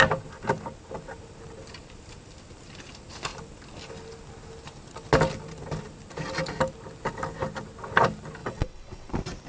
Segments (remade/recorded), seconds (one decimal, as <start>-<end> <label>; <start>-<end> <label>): 0.0-8.4 recorded; 8.4-9.1 remade; 9.1-9.5 recorded